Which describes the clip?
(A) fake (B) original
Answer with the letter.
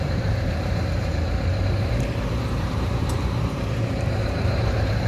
A